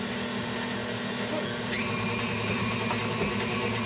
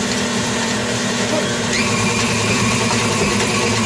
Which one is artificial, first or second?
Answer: second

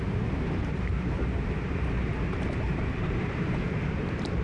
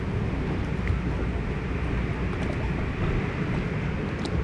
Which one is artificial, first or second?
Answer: first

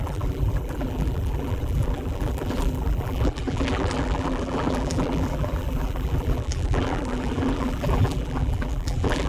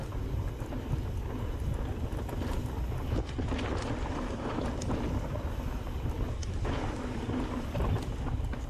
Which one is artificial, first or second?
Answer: first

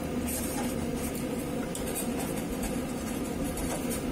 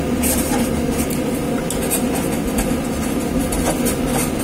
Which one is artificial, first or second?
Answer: first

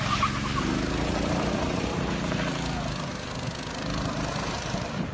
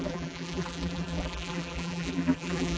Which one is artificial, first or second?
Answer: second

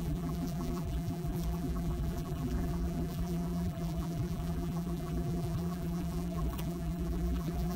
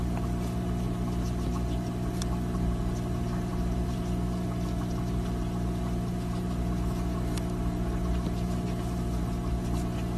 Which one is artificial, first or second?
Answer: first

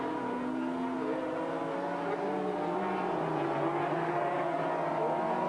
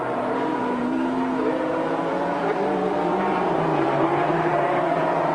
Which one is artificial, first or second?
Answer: second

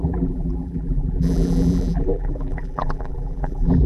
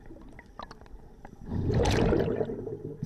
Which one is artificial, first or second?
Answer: first